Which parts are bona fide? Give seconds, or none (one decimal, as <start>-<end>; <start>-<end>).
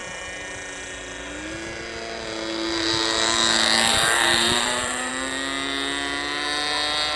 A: 0.0-3.9; 5.1-7.2